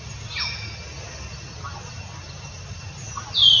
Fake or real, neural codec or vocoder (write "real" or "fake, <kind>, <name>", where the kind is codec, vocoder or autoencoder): real